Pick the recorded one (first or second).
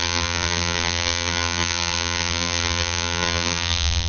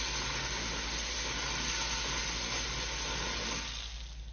second